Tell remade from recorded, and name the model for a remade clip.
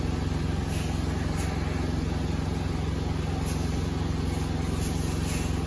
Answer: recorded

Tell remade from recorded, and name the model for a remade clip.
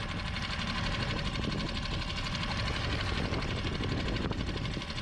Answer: recorded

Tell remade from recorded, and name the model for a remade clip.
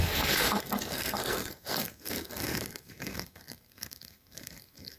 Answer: remade, codec, SNAC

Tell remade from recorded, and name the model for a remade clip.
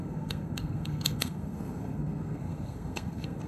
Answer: remade, codec, SNAC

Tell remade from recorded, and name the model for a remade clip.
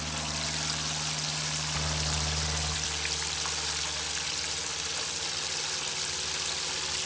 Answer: recorded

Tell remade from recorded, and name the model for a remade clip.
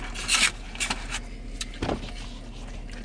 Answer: recorded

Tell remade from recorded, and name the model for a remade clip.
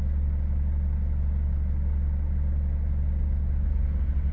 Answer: recorded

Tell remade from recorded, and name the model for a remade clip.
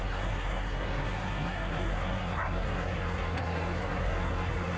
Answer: remade, codec, SNAC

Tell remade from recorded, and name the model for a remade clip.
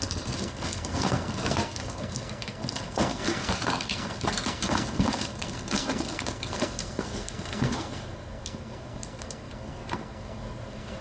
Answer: remade, codec, SNAC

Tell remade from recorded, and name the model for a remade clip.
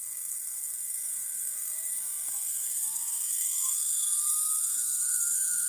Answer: remade, codec, SNAC